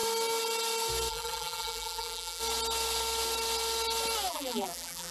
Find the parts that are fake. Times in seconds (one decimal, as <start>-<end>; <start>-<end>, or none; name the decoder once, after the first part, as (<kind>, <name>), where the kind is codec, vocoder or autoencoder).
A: 1.1-2.4 (vocoder, BigVGAN v2); 4.3-5.1